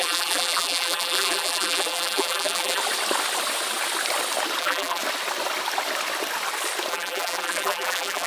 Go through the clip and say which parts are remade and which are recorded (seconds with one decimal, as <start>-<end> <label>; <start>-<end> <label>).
0.0-2.8 remade; 2.8-4.6 recorded; 4.6-5.0 remade; 5.0-6.9 recorded; 6.9-8.3 remade